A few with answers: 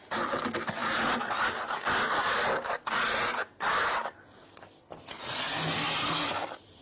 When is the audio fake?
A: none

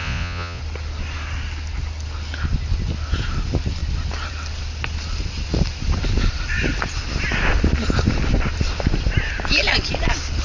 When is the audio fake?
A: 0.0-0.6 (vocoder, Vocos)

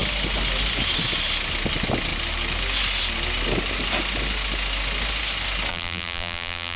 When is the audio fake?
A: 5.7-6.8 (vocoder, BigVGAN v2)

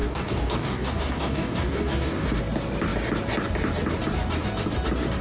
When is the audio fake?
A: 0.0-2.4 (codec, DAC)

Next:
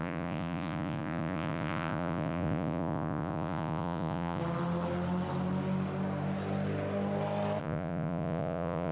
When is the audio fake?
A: 0.0-4.4 (vocoder, Vocos); 7.6-8.9

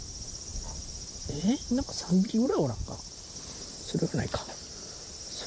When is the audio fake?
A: 0.0-5.5 (vocoder, BigVGAN v2)

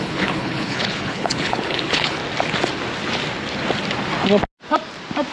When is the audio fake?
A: 0.0-2.2 (codec, HILCodec)